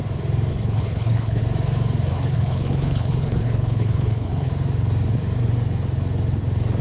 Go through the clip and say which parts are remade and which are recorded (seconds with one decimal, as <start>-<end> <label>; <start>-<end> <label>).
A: 0.0-0.5 recorded; 0.5-1.4 remade; 1.4-2.1 recorded; 2.1-4.5 remade; 4.5-6.8 recorded